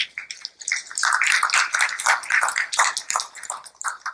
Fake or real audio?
fake